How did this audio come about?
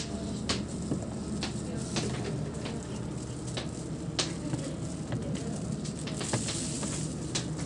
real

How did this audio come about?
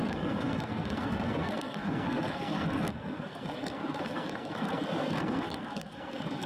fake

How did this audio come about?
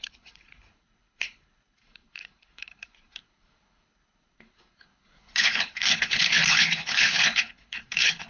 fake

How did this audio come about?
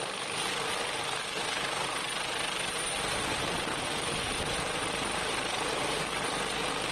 real